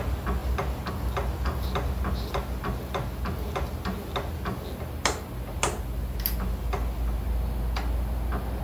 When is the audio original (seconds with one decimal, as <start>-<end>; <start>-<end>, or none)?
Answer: 0.0-8.6